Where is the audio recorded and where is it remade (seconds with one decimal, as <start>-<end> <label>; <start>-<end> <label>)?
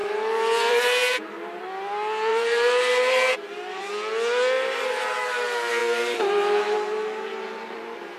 0.0-1.6 remade; 1.6-2.3 recorded; 2.3-3.8 remade; 3.8-5.8 recorded; 5.8-8.2 remade